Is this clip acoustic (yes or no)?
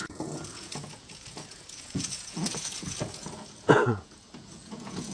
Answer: no